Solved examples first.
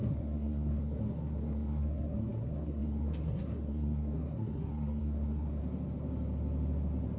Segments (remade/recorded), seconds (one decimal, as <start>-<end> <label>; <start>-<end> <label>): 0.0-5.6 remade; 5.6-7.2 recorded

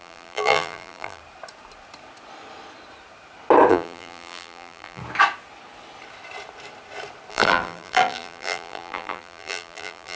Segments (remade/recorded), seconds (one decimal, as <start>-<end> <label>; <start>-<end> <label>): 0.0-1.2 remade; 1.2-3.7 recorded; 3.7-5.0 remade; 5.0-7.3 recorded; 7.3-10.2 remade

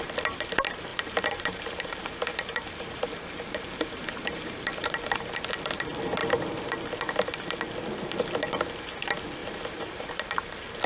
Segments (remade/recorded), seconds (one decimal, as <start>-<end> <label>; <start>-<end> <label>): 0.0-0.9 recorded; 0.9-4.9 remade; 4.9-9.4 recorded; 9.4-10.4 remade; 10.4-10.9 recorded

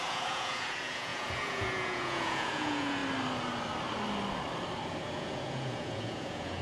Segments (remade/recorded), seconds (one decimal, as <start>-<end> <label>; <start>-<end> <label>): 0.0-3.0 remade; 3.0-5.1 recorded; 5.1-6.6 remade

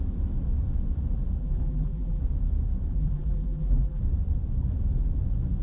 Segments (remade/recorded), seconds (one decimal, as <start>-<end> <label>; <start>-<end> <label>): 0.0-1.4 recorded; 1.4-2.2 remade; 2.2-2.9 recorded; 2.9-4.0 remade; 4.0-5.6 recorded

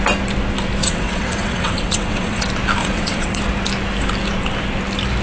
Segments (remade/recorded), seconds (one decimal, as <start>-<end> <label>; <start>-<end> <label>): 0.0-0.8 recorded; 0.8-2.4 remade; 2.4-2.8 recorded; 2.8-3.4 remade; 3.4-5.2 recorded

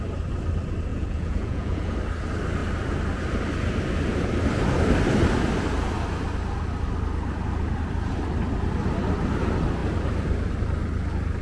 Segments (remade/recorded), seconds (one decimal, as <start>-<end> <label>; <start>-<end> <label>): 0.0-0.9 recorded; 0.9-1.9 remade; 1.9-11.4 recorded